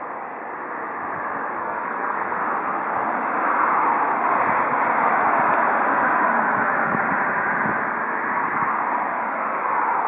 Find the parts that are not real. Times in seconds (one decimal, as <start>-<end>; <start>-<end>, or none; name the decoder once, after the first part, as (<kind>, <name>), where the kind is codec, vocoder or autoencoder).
1.6-2.4 (codec, SNAC)